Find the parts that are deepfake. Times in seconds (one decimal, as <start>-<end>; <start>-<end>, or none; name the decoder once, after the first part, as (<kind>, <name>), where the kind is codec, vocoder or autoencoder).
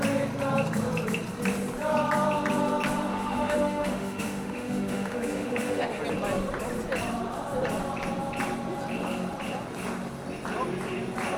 3.1-6.0 (autoencoder, DAC-VAE)